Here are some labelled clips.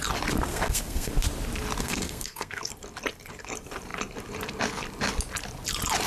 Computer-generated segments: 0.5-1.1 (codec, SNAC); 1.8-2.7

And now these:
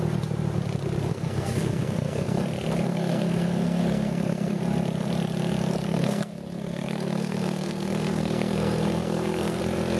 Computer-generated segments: 1.1-2.4 (codec, SNAC); 2.9-4.6; 5.8-9.6